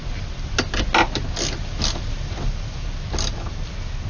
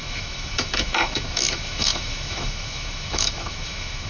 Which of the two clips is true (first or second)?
first